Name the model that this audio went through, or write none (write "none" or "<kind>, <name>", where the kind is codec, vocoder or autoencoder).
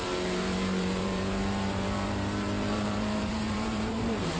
vocoder, BigVGAN v2